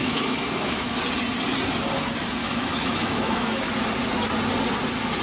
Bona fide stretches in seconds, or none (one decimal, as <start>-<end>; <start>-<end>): 1.0-2.4; 3.7-5.2